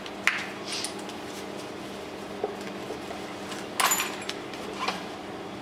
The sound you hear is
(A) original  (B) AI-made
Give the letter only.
A